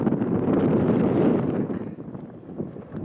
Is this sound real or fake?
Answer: real